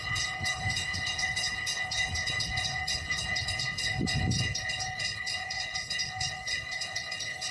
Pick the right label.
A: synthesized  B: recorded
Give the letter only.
A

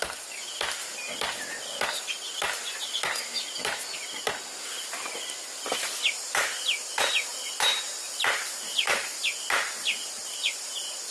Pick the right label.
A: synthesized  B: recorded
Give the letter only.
B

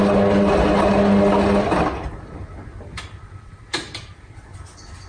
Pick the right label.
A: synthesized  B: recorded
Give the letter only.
B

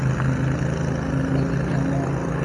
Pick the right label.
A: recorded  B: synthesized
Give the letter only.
A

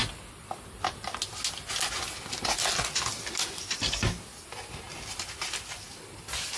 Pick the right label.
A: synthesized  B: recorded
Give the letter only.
B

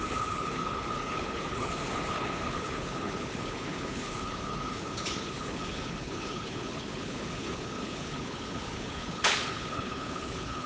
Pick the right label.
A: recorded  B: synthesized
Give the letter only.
B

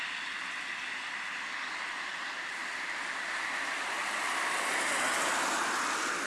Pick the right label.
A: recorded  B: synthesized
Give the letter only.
A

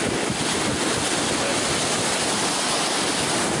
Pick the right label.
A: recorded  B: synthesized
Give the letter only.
A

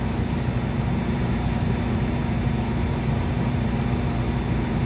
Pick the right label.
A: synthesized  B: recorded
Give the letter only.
B